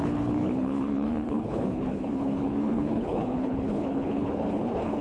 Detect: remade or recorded remade